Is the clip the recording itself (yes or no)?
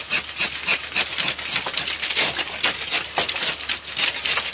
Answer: yes